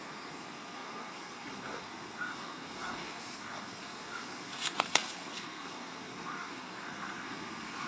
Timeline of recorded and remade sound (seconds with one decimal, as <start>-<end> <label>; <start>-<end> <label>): 0.0-7.9 remade